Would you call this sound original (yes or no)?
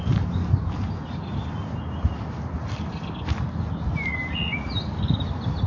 yes